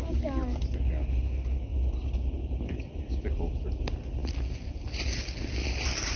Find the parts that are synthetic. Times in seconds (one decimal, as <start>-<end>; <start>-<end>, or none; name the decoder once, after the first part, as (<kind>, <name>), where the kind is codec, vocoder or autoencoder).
none